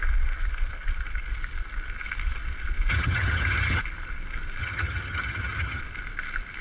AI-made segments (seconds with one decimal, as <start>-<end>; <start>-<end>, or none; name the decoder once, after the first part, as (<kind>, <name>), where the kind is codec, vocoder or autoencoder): 2.9-3.8 (vocoder, HiFi-GAN); 4.6-5.8